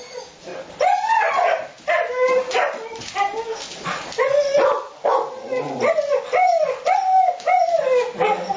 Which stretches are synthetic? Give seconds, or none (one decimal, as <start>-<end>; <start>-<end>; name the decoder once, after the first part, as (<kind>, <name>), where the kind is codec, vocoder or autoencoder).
0.0-4.4 (vocoder, BigVGAN v2); 8.2-8.6